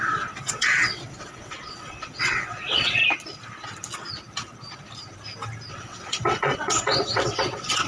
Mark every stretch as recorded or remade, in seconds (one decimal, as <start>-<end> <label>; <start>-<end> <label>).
0.0-3.0 remade; 3.0-5.7 recorded; 5.7-7.9 remade

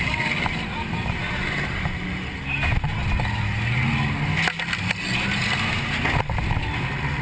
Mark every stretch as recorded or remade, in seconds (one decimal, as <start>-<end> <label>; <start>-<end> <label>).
0.0-7.2 recorded

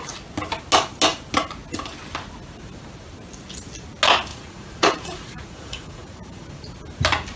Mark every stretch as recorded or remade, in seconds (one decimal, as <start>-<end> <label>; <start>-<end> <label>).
0.0-4.3 recorded; 4.3-6.8 remade; 6.8-7.4 recorded

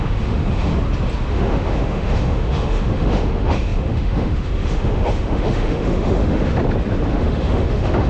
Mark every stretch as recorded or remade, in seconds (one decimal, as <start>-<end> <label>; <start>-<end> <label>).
0.0-0.7 remade; 0.7-1.3 recorded; 1.3-6.5 remade; 6.5-7.1 recorded; 7.1-8.1 remade

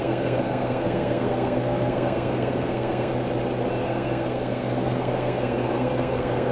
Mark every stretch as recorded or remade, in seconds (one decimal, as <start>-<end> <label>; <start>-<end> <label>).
0.0-3.1 remade; 3.1-3.8 recorded; 3.8-6.5 remade

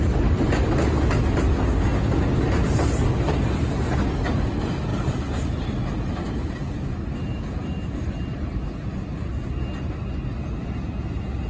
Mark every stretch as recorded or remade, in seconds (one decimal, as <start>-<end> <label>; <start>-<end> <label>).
0.0-11.5 recorded

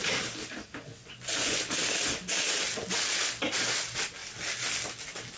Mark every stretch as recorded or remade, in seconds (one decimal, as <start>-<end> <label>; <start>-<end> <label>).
0.0-0.9 recorded; 0.9-1.6 remade; 1.6-5.4 recorded

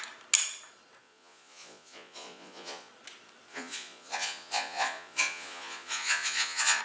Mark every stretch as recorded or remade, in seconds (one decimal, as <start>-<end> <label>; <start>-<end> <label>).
0.0-1.0 recorded; 1.0-2.9 remade; 2.9-3.5 recorded; 3.5-6.8 remade